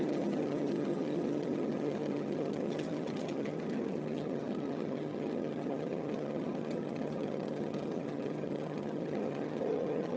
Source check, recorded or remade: remade